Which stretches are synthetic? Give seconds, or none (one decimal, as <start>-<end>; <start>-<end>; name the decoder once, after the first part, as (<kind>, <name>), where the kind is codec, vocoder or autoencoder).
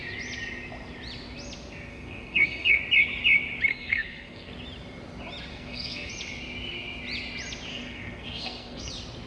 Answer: 1.9-2.8 (codec, SNAC); 3.7-4.5; 5.5-6.1; 7.7-8.9